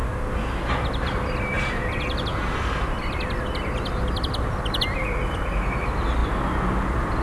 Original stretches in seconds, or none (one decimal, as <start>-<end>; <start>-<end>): 0.0-7.2